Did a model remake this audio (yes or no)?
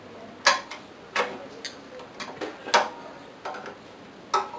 no